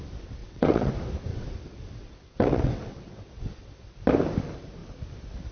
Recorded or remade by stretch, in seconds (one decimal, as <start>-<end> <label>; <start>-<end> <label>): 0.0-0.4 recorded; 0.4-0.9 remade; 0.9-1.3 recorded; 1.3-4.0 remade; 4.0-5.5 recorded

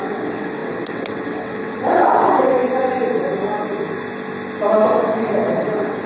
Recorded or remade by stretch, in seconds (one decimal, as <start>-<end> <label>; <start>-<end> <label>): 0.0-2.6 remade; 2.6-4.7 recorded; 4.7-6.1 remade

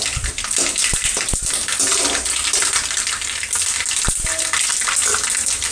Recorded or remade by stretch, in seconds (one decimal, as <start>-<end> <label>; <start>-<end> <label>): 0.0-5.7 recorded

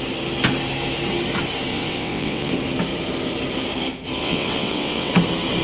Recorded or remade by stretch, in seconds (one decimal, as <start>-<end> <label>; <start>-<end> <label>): 0.0-1.7 recorded; 1.7-2.5 remade; 2.5-4.2 recorded; 4.2-5.1 remade; 5.1-5.6 recorded

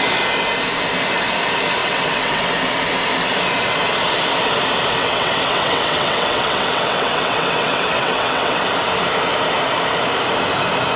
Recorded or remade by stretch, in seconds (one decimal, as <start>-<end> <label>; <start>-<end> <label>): 0.0-1.8 recorded; 1.8-2.4 remade; 2.4-5.0 recorded; 5.0-8.6 remade; 8.6-11.0 recorded

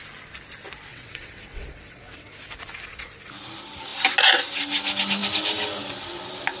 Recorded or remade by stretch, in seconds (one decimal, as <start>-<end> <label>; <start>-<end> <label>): 0.0-0.9 recorded; 0.9-2.3 remade; 2.3-6.6 recorded

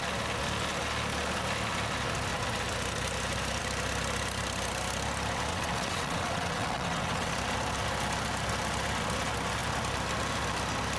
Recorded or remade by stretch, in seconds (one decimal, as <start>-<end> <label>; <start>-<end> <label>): 0.0-5.5 recorded; 5.5-7.3 remade; 7.3-11.0 recorded